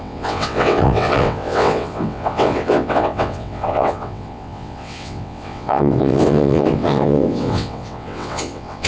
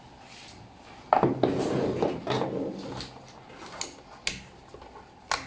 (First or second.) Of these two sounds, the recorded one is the second